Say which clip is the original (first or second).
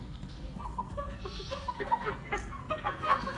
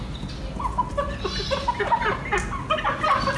second